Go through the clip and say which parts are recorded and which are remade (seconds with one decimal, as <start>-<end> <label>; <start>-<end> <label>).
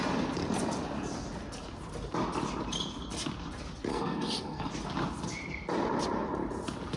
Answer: 0.0-3.9 recorded; 3.9-4.7 remade; 4.7-7.0 recorded